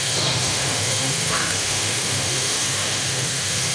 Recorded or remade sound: remade